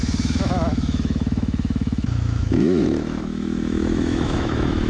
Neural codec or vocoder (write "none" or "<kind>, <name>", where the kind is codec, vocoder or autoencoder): autoencoder, DAC-VAE